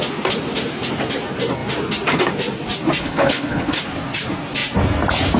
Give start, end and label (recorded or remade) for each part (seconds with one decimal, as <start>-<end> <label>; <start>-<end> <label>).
0.0-3.0 recorded; 3.0-3.8 remade; 3.8-5.4 recorded